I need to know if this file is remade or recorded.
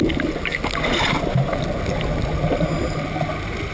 recorded